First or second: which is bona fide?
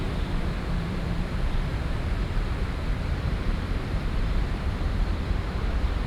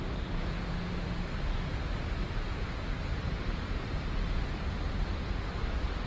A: second